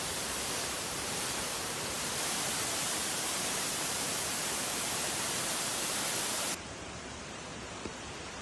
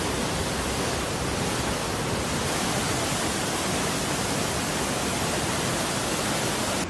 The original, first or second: second